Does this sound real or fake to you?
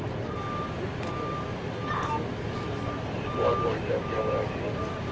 real